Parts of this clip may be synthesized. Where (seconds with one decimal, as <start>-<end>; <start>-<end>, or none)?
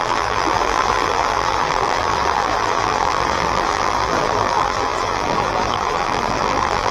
0.0-6.9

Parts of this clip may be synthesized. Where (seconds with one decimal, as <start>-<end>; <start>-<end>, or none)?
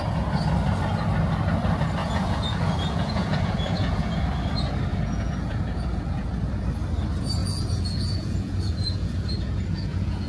2.0-4.2; 4.9-6.3; 7.4-10.3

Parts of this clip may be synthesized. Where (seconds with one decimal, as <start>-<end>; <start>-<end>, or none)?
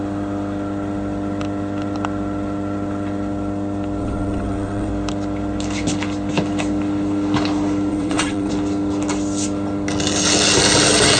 4.0-4.9; 7.9-8.5